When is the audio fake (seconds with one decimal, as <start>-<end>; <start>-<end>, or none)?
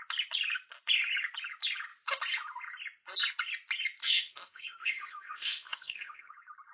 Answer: 4.0-6.3